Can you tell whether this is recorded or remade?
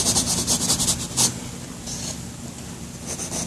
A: recorded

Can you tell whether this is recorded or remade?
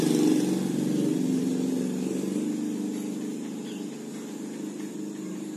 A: recorded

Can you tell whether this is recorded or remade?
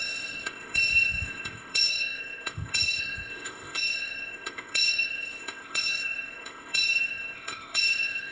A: remade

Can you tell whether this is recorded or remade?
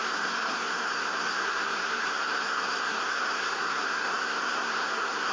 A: remade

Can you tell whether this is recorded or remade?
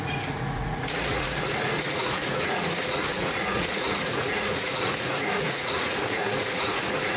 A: remade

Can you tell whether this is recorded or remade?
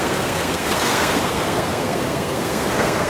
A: remade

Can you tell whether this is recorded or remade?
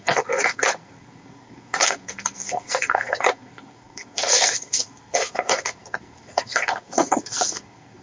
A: remade